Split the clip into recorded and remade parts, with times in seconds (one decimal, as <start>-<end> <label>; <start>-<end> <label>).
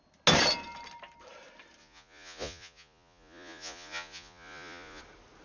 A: 0.0-1.8 recorded; 1.8-5.0 remade; 5.0-5.4 recorded